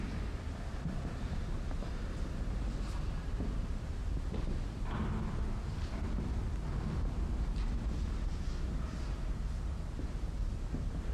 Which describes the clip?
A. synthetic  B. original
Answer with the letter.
B